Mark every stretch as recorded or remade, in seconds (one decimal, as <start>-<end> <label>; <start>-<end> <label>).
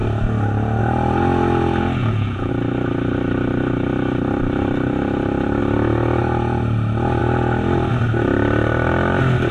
0.0-2.0 recorded; 2.0-2.5 remade; 2.5-9.5 recorded